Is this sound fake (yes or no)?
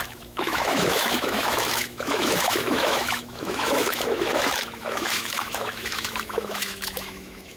yes